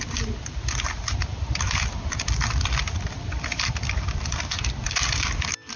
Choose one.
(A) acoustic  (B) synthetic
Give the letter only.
B